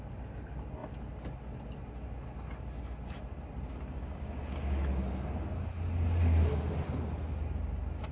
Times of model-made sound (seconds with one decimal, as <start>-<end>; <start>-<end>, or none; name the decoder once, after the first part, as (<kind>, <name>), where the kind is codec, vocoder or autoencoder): none